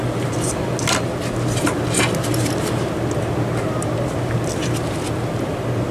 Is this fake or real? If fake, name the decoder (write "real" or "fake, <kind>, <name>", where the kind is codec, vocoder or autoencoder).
real